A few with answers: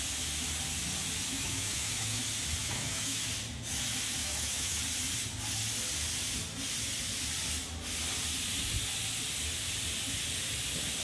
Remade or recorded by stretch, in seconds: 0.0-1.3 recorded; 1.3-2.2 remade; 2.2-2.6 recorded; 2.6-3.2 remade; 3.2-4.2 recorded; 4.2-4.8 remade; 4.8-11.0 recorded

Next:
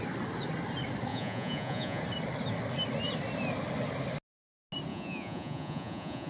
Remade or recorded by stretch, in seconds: 0.0-1.1 recorded; 1.1-2.0 remade; 2.0-4.9 recorded; 4.9-6.3 remade

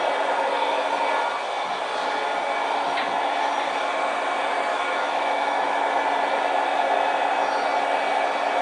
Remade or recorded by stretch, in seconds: 0.0-4.7 recorded; 4.7-5.9 remade; 5.9-8.6 recorded

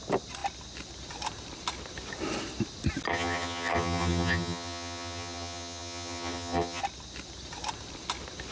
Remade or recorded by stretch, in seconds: 0.0-3.1 recorded; 3.1-6.8 remade; 6.8-8.5 recorded

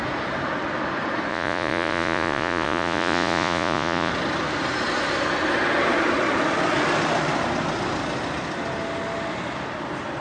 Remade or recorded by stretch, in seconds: 0.0-1.3 recorded; 1.3-4.1 remade; 4.1-10.2 recorded